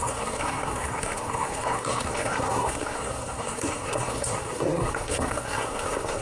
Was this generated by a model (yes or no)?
yes